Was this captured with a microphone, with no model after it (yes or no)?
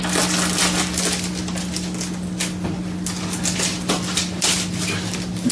yes